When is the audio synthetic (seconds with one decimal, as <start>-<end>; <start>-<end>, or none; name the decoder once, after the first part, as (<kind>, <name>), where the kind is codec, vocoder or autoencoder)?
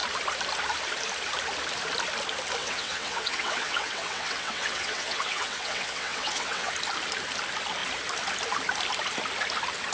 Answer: 2.6-6.7 (vocoder, WaveNeXt)